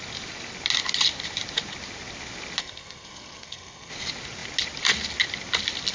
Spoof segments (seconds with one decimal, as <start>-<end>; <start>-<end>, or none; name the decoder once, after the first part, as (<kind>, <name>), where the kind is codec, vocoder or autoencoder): 2.6-3.9 (codec, SNAC)